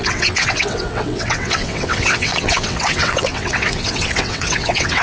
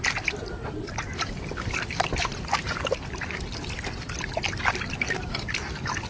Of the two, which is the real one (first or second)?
second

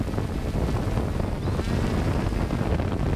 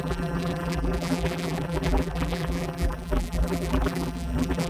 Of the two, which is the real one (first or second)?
first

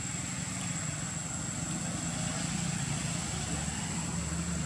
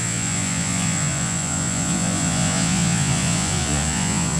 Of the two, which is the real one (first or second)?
first